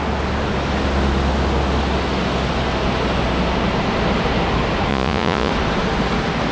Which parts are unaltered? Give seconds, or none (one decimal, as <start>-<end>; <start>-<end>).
0.0-4.9; 5.5-6.5

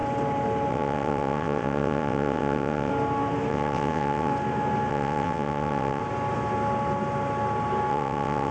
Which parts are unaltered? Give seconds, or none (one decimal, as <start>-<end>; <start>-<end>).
0.0-0.7; 2.9-3.5; 4.3-4.9; 6.0-7.9

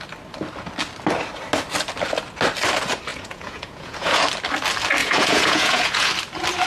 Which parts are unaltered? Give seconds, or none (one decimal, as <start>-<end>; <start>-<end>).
0.0-3.1; 4.2-5.0; 6.1-6.7

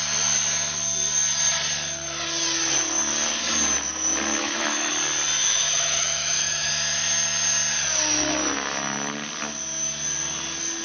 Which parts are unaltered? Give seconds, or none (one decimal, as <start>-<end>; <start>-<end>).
0.0-4.4; 4.9-5.4; 6.7-10.8

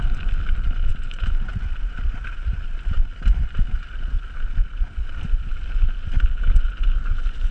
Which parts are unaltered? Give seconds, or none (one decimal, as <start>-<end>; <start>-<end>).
0.0-7.5

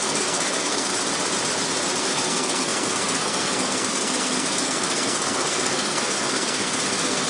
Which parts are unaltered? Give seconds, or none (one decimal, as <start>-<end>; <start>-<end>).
0.9-2.0

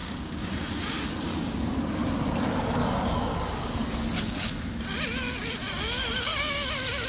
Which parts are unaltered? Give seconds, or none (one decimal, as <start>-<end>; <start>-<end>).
1.7-2.8; 4.5-7.1

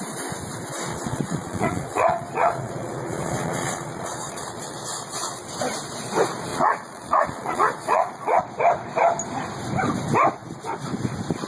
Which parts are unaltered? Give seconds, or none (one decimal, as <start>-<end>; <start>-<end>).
0.0-0.9; 5.4-6.5; 8.4-11.5